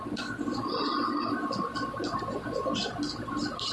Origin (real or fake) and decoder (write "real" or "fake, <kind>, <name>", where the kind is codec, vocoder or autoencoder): real